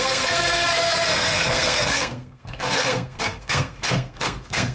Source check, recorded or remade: remade